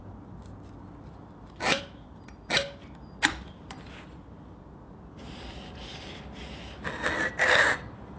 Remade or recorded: recorded